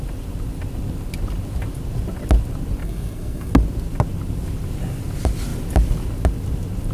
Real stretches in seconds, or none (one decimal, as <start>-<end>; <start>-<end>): 0.0-2.8; 3.5-6.9